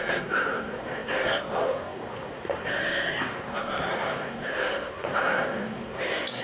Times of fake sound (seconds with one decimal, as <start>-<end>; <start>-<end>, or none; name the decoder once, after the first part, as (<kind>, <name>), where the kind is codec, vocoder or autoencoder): 0.0-6.4 (codec, SNAC)